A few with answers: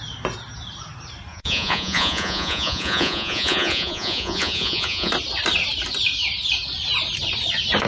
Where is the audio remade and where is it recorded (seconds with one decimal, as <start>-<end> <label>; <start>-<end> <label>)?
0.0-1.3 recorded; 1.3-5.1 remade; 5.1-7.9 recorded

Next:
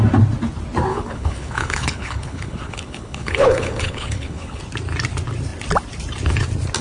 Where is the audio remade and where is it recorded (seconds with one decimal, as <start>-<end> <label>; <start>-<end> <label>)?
0.0-0.9 recorded; 0.9-4.6 remade; 4.6-6.8 recorded

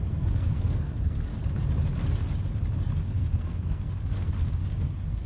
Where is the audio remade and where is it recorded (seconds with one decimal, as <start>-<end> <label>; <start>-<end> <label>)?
0.0-1.3 remade; 1.3-3.0 recorded; 3.0-5.3 remade

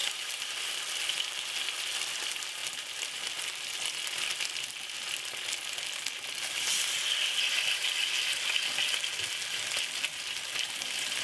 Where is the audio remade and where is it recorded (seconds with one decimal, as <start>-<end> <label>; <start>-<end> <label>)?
0.0-0.5 remade; 0.5-2.6 recorded; 2.6-3.2 remade; 3.2-11.2 recorded

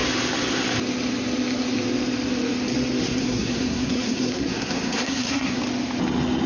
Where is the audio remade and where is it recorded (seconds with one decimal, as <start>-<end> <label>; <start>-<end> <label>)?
0.0-3.0 recorded; 3.0-5.6 remade; 5.6-6.5 recorded

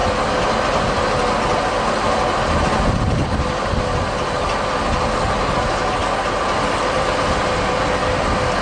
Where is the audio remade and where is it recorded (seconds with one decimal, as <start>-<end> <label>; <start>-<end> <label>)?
0.0-8.6 recorded

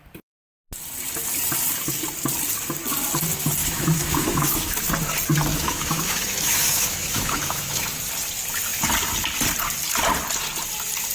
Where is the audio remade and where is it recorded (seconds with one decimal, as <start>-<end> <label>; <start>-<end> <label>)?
0.0-3.6 recorded; 3.6-4.9 remade; 4.9-5.5 recorded; 5.5-8.0 remade; 8.0-11.1 recorded